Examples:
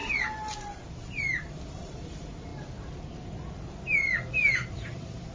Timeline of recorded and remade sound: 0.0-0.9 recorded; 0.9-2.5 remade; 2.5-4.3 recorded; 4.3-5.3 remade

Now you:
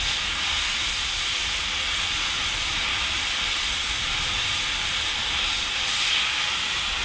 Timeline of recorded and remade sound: 0.0-7.0 remade

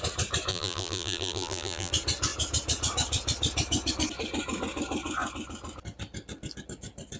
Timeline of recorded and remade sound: 0.0-0.5 recorded; 0.5-1.9 remade; 1.9-7.2 recorded